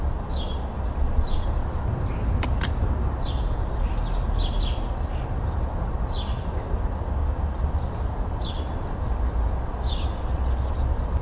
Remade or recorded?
recorded